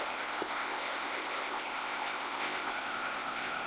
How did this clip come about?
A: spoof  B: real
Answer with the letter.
A